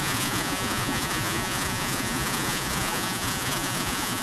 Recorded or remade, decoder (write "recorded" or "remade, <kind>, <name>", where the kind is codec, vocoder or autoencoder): remade, vocoder, Vocos